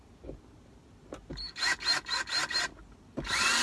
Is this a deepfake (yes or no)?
no